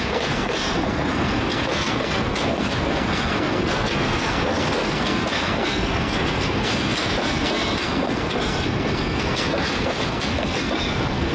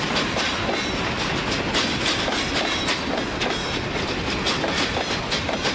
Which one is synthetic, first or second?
first